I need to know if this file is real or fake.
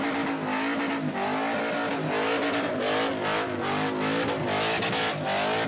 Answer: real